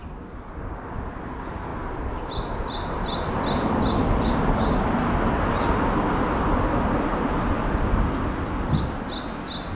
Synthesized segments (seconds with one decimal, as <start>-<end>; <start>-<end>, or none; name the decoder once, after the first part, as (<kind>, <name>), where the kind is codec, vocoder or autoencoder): 0.0-0.7 (vocoder, BigVGAN v2); 1.7-4.3

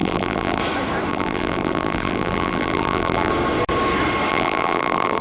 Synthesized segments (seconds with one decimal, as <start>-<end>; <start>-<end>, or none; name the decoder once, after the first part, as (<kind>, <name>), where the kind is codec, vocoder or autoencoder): 0.0-0.6 (vocoder, BigVGAN v2); 1.1-3.3; 4.3-5.2

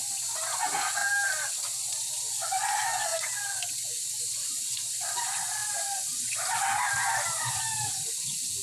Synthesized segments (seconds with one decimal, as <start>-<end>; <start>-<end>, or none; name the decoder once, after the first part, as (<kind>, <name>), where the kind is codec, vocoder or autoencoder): 3.1-3.7 (vocoder, BigVGAN v2)

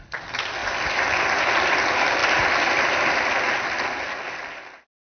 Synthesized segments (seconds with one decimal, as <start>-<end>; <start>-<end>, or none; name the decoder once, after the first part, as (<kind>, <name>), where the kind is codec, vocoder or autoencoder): none

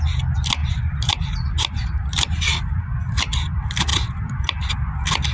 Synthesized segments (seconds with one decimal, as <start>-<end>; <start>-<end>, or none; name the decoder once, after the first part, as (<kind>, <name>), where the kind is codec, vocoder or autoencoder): 0.6-2.4 (vocoder, BigVGAN v2); 3.9-4.7

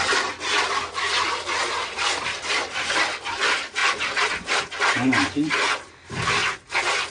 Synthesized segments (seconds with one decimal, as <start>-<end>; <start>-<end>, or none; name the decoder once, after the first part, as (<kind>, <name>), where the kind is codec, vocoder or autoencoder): none

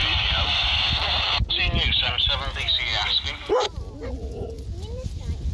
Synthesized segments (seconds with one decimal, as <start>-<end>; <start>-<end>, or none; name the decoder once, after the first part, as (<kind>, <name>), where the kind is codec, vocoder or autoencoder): none

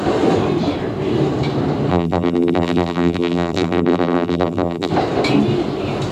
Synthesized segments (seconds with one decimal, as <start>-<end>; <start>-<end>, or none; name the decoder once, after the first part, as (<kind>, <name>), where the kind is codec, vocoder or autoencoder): 1.9-4.9 (vocoder, BigVGAN v2)